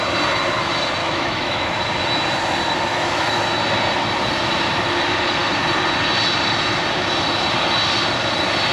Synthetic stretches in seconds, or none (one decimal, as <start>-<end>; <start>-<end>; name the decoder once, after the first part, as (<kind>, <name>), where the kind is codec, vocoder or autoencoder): 1.0-1.8 (autoencoder, DAC-VAE); 2.9-3.4